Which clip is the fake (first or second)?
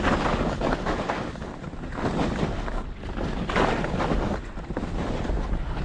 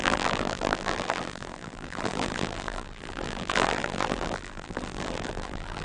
second